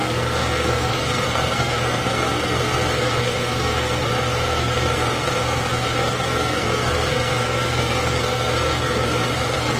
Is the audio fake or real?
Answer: fake